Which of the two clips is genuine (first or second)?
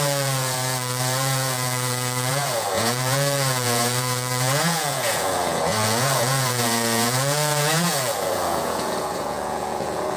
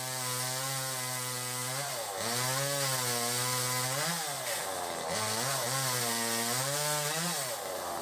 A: second